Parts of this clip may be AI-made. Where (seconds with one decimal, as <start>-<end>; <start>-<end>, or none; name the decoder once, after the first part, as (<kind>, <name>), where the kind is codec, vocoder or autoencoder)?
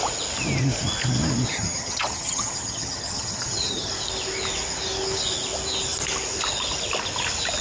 1.5-3.9 (vocoder, HiFi-GAN)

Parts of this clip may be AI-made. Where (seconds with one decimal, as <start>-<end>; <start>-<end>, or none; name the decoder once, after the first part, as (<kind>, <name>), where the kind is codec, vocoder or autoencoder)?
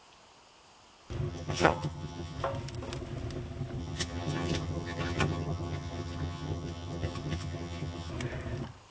1.3-2.4 (vocoder, HiFi-GAN); 3.8-8.1